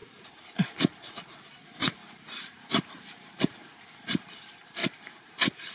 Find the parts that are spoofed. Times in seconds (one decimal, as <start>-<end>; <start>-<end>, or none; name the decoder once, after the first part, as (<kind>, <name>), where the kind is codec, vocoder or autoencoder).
3.0-3.7 (vocoder, BigVGAN v2); 4.2-5.7